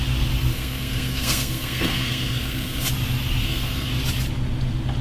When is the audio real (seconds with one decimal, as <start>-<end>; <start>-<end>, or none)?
0.0-0.5; 2.9-3.4; 3.9-5.0

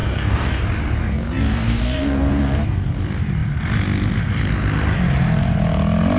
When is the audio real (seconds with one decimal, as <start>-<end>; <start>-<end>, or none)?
0.6-1.0; 3.0-6.2

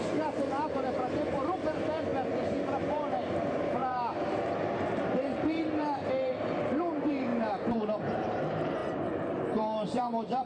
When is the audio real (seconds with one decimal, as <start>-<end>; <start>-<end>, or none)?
2.1-2.8